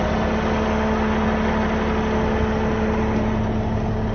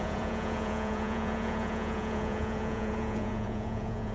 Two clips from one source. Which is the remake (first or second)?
second